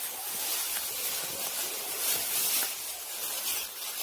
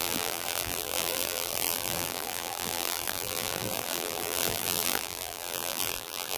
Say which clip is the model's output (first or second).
second